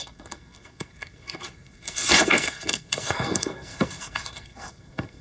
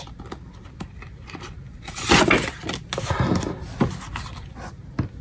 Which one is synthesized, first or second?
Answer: first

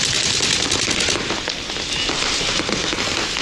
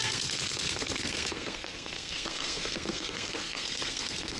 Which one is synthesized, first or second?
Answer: second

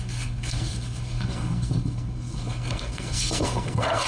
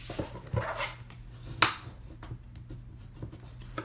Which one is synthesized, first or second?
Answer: first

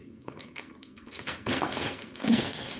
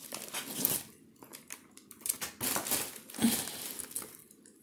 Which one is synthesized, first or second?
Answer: first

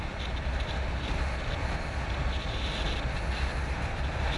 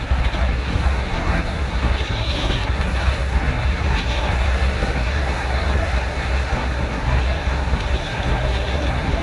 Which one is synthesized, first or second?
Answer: second